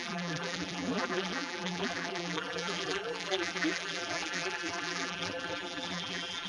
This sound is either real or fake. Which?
fake